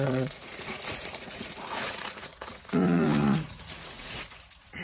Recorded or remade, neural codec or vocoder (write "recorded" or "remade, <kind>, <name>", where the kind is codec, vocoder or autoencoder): remade, vocoder, Vocos